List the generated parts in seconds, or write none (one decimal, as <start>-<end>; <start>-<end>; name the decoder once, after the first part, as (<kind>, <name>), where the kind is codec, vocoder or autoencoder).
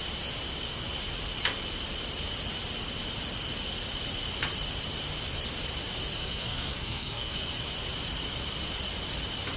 6.2-7.5 (codec, SNAC)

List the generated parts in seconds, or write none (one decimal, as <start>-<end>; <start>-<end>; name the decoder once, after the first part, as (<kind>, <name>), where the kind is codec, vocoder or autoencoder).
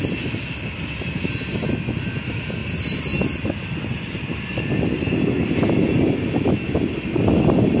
none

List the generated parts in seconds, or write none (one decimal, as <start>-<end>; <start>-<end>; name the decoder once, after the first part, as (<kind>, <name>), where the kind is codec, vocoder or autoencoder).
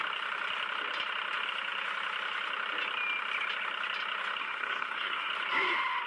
4.4-5.3 (codec, SNAC)